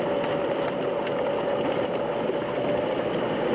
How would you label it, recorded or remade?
recorded